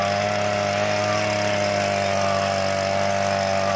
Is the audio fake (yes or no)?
no